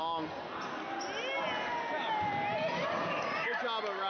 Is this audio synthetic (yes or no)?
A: no